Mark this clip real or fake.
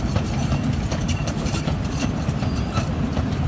fake